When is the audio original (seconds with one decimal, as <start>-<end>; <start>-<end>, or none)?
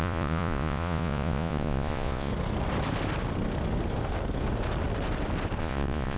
2.3-5.6